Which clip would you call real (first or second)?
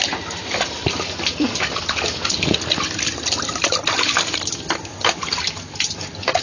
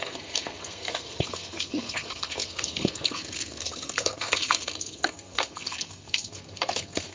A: first